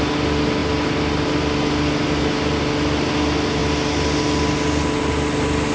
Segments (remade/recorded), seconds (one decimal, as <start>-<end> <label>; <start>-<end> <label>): 0.0-5.7 recorded